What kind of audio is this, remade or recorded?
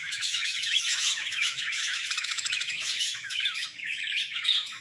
remade